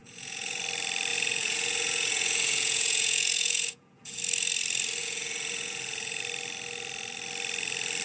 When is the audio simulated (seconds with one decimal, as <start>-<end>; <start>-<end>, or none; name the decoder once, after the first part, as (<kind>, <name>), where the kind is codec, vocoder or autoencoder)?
0.0-0.6 (vocoder, Vocos); 1.1-4.2; 5.0-6.2